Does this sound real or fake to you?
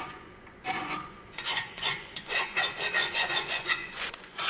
fake